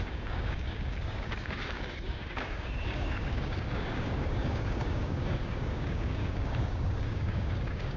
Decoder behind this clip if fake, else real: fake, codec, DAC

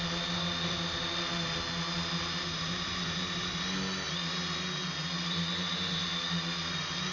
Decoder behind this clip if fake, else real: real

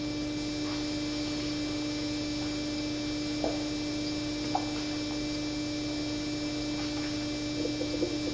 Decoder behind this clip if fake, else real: real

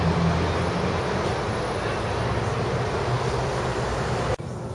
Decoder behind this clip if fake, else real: real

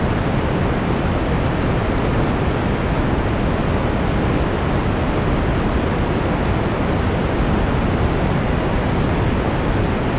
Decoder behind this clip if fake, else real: real